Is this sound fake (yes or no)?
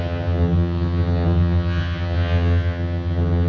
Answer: yes